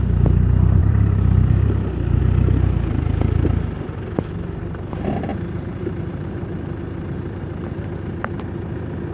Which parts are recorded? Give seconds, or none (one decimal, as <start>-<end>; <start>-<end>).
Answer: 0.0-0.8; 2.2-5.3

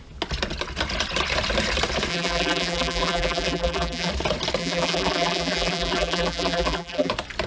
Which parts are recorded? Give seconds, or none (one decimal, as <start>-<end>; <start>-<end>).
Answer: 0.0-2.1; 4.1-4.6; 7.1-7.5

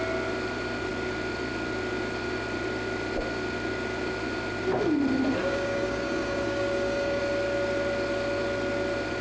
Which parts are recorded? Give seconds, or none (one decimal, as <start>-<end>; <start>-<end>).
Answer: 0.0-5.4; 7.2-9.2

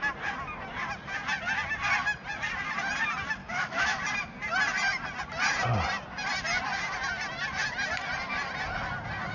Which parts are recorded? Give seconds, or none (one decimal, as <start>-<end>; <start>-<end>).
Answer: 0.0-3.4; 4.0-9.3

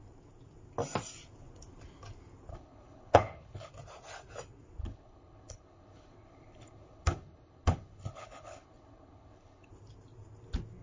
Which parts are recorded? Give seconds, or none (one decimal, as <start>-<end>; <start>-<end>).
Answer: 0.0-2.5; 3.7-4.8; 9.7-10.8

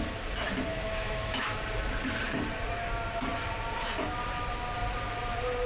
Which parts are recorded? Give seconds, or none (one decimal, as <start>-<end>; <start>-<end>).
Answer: 0.0-0.7; 1.6-5.7

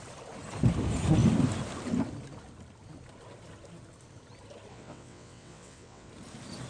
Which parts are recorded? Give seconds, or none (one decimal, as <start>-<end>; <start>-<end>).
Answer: 0.0-4.7; 6.1-6.7